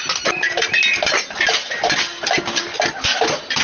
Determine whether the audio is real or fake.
real